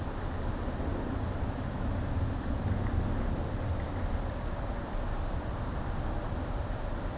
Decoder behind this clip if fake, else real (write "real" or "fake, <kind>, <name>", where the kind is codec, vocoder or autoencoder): real